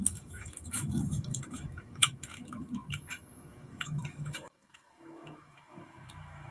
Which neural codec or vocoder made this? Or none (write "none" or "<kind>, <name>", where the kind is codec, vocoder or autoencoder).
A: autoencoder, DAC-VAE